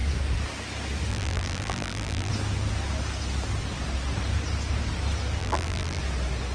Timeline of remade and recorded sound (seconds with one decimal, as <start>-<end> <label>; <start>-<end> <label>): 0.0-1.1 recorded; 1.1-2.3 remade; 2.3-5.4 recorded; 5.4-6.0 remade; 6.0-6.5 recorded